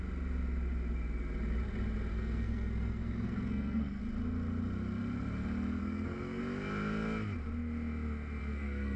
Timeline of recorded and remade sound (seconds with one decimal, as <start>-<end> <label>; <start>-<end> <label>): 0.0-2.1 recorded; 2.1-4.0 remade; 4.0-5.8 recorded; 5.8-6.4 remade; 6.4-8.4 recorded; 8.4-9.0 remade

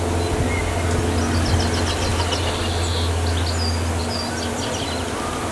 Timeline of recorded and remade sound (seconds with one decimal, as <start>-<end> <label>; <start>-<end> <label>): 0.0-5.5 recorded